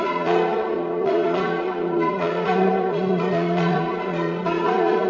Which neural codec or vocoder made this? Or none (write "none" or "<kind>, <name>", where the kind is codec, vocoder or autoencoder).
vocoder, Vocos